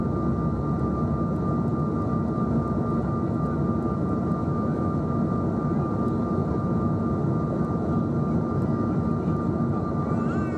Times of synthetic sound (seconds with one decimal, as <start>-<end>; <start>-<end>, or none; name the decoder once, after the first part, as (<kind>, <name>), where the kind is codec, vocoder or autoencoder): 4.4-5.0 (autoencoder, DAC-VAE)